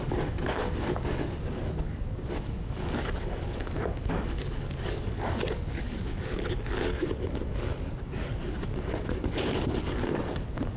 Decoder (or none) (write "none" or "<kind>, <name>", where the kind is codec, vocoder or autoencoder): codec, DAC